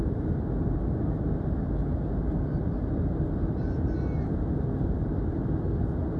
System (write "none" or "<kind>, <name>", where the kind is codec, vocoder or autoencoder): none